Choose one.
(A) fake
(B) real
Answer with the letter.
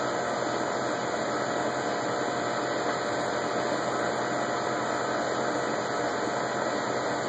B